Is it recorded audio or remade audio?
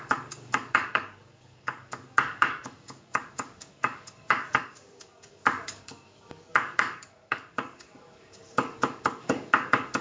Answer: remade